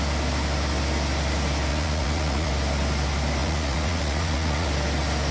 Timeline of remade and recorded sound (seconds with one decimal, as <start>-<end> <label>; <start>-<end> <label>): 0.0-1.7 recorded; 1.7-2.5 remade; 2.5-3.4 recorded; 3.4-4.7 remade; 4.7-5.3 recorded